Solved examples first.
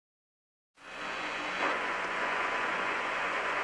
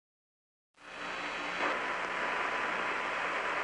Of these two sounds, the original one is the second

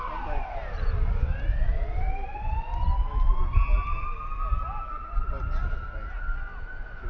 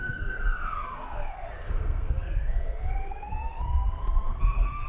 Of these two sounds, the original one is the first